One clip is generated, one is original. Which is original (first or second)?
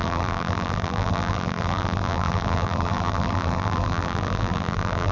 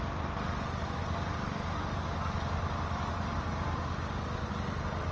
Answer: second